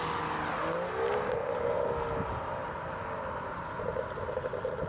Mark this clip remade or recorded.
recorded